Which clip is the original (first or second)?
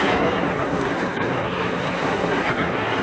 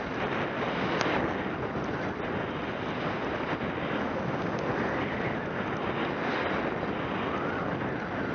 second